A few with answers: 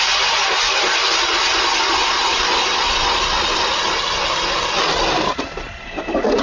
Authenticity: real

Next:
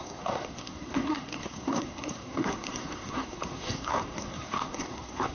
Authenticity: fake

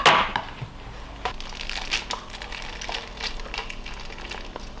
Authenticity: real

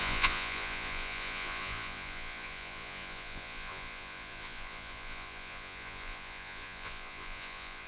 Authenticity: fake